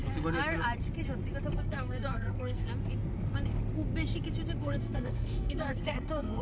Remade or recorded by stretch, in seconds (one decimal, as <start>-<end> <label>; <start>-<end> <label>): 0.0-1.5 recorded; 1.5-2.7 remade; 2.7-4.6 recorded; 4.6-6.4 remade